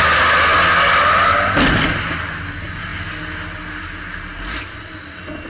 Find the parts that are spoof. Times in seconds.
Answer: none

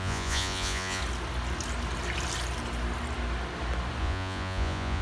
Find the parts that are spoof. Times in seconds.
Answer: 0.0-1.0 (vocoder, Vocos); 4.0-5.0

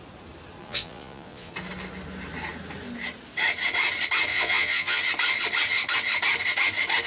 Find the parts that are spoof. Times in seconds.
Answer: 0.6-1.5 (vocoder, Vocos); 4.3-5.0

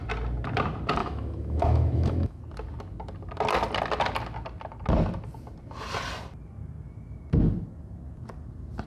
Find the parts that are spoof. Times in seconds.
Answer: 1.0-2.4 (autoencoder, DAC-VAE)

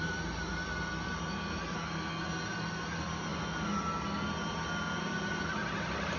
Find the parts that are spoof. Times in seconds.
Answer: none